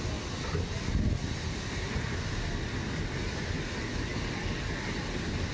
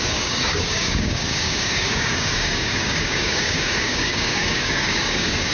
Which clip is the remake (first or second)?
second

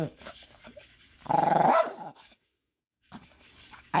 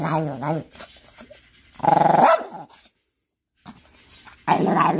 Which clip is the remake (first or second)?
first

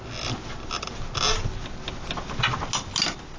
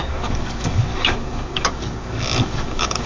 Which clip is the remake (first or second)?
second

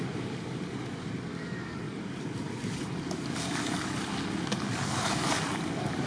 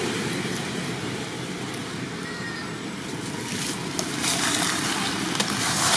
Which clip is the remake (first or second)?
first